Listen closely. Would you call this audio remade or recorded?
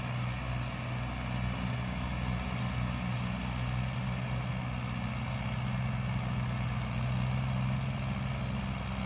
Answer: recorded